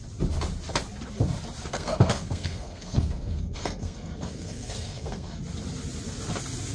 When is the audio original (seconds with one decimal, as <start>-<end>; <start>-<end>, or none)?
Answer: 0.0-1.7; 5.4-6.7